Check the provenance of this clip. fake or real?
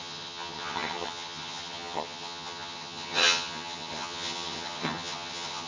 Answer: fake